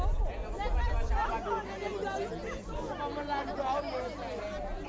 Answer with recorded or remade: recorded